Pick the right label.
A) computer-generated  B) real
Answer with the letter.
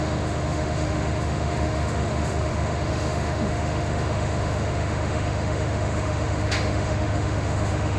A